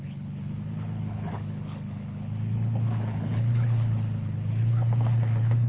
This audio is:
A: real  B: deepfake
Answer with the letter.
B